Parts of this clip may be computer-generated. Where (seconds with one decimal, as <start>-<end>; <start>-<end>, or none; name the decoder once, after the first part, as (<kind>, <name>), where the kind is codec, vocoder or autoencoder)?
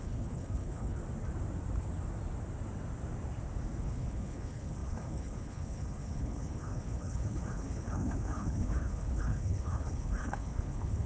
0.0-1.0 (codec, HILCodec); 3.8-11.1